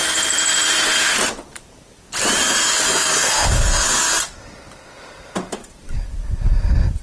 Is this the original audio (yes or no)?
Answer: yes